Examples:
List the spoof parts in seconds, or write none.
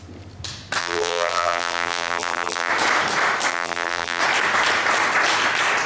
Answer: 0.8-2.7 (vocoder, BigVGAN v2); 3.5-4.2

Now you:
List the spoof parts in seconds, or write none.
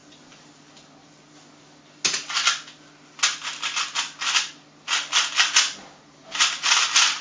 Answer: none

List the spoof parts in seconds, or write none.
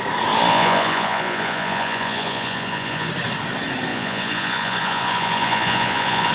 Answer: 0.5-3.1 (vocoder, Vocos); 3.9-6.3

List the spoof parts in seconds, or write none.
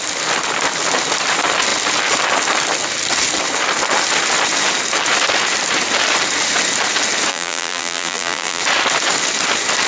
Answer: 7.3-8.6 (vocoder, BigVGAN v2)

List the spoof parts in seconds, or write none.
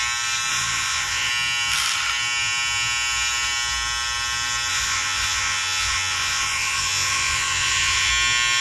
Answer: 0.5-1.3 (vocoder, Vocos); 4.7-8.1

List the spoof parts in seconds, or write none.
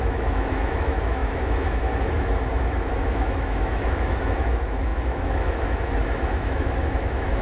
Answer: 0.0-7.4 (autoencoder, DAC-VAE)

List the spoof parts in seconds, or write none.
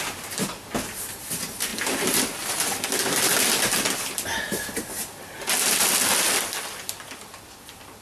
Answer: none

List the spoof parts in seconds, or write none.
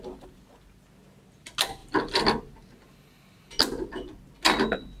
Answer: none